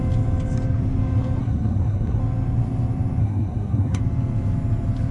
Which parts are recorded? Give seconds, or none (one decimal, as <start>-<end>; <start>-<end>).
0.0-1.4; 2.2-3.2; 4.0-5.1